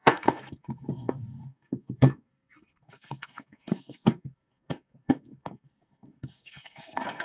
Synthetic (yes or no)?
yes